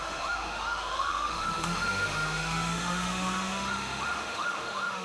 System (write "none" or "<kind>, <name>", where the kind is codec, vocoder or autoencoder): autoencoder, DAC-VAE